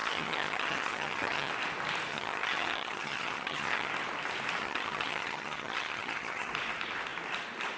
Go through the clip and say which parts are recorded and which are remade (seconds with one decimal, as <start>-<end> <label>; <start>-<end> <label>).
0.0-1.5 remade; 1.5-2.1 recorded; 2.1-3.9 remade; 3.9-4.6 recorded; 4.6-6.5 remade; 6.5-7.8 recorded